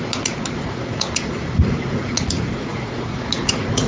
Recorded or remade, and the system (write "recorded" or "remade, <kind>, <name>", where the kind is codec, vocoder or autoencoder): remade, vocoder, Vocos